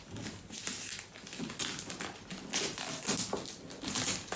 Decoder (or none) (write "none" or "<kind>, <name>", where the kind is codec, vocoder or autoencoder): none